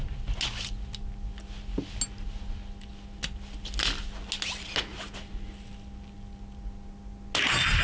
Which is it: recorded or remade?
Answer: recorded